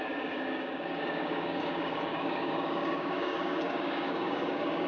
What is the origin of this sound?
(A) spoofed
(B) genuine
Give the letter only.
A